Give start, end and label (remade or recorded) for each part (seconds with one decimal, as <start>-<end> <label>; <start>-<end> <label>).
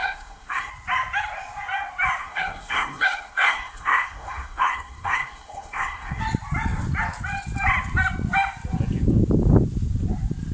0.0-0.7 remade; 0.7-2.2 recorded; 2.2-6.2 remade; 6.2-10.5 recorded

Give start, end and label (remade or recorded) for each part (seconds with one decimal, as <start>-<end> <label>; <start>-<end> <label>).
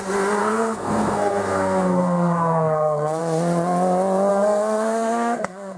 0.0-0.4 recorded; 0.4-3.2 remade; 3.2-4.3 recorded; 4.3-5.8 remade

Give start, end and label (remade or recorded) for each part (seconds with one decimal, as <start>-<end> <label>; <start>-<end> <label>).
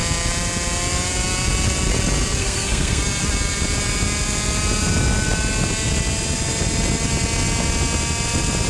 0.0-2.4 recorded; 2.4-3.0 remade; 3.0-8.7 recorded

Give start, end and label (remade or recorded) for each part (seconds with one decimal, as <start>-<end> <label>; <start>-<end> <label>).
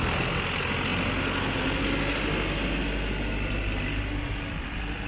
0.0-5.1 recorded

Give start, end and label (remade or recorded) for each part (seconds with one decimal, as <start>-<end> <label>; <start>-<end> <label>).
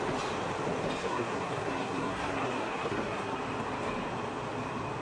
0.0-1.0 recorded; 1.0-3.4 remade; 3.4-5.0 recorded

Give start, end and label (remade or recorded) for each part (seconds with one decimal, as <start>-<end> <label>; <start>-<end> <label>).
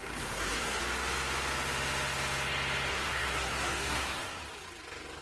0.0-0.8 remade; 0.8-2.9 recorded; 2.9-4.4 remade; 4.4-5.2 recorded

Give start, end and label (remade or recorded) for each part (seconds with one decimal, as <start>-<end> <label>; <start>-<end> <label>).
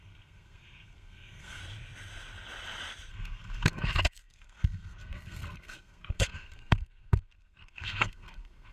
0.0-1.6 remade; 1.6-3.1 recorded; 3.1-8.7 remade